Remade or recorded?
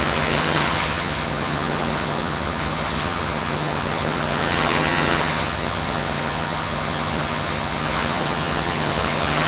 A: remade